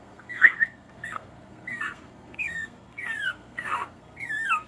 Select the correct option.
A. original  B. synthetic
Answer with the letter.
B